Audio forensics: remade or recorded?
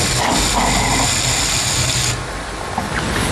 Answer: recorded